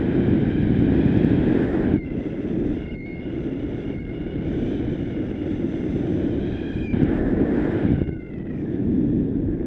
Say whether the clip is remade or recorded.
recorded